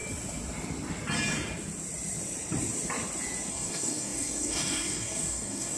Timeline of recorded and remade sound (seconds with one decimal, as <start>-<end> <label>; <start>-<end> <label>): 0.0-3.5 recorded; 3.5-5.8 remade

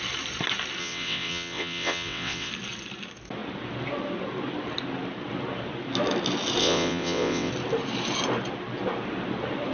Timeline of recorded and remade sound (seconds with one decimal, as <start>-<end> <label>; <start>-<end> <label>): 0.0-0.8 recorded; 0.8-2.5 remade; 2.5-6.6 recorded; 6.6-7.5 remade; 7.5-9.7 recorded

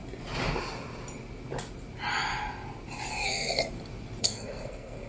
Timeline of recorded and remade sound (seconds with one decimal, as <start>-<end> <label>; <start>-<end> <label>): 0.0-3.1 recorded; 3.1-3.6 remade; 3.6-4.2 recorded; 4.2-5.1 remade

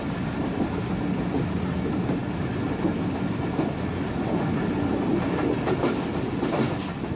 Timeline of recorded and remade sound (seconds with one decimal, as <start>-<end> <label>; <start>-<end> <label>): 0.0-7.2 recorded

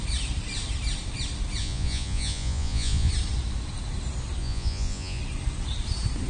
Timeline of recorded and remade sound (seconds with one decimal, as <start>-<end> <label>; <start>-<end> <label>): 0.0-1.6 recorded; 1.6-3.1 remade; 3.1-4.4 recorded; 4.4-5.2 remade; 5.2-6.3 recorded

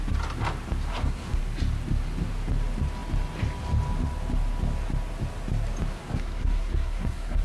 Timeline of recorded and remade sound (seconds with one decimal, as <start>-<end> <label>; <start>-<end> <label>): 0.0-0.9 recorded; 0.9-1.4 remade; 1.4-5.9 recorded; 5.9-7.4 remade